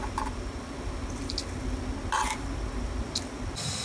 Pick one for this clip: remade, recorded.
recorded